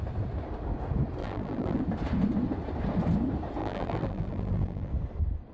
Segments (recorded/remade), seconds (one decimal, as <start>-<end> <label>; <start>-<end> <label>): 0.0-1.2 recorded; 1.2-1.8 remade; 1.8-3.6 recorded; 3.6-4.9 remade; 4.9-5.5 recorded